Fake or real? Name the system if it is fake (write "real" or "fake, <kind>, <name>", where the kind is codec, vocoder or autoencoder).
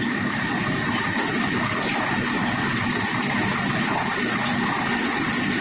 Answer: real